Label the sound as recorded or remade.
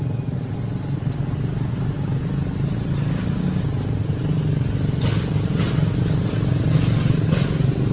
recorded